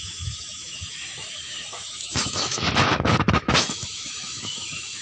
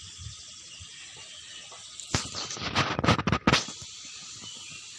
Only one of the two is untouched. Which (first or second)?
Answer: second